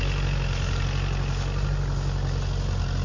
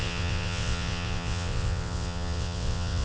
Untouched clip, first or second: first